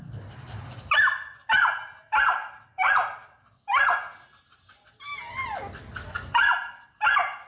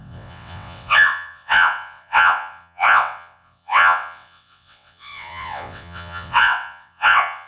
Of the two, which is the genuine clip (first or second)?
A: first